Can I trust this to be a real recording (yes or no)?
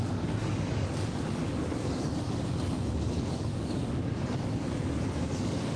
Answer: no